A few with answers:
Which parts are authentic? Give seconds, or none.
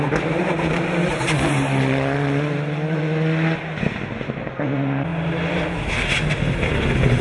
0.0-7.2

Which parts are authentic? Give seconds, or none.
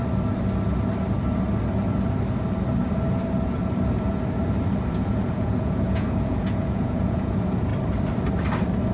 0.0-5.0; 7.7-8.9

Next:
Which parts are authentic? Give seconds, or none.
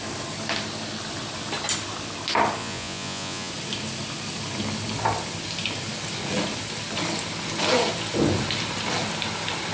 0.0-2.6; 3.5-9.7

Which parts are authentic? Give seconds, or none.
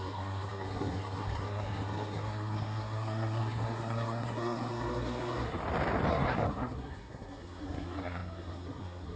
5.6-6.1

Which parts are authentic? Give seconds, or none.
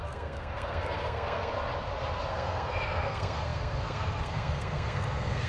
1.5-2.3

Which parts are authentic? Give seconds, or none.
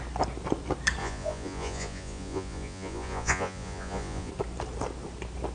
0.0-1.0; 4.3-5.5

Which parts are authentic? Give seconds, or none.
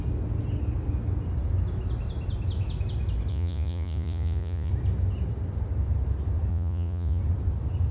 0.0-3.3; 4.7-6.5; 7.2-7.9